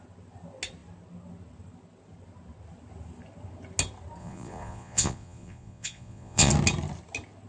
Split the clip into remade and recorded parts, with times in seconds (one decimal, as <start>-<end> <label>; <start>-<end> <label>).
0.0-4.2 recorded; 4.2-6.5 remade; 6.5-7.5 recorded